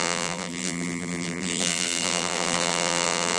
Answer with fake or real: fake